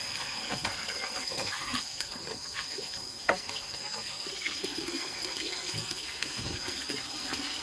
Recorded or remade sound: remade